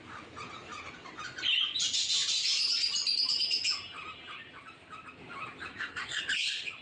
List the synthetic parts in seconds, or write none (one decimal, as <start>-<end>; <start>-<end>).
5.7-6.2